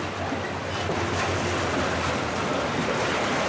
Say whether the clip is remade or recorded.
recorded